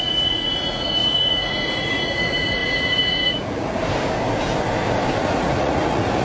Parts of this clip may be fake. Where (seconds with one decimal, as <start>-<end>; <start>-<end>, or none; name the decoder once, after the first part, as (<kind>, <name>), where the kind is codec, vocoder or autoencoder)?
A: 0.0-3.8 (vocoder, Vocos); 5.2-6.2